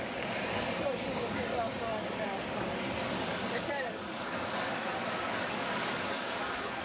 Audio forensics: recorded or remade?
remade